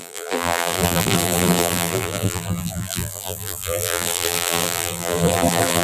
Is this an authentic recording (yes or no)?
no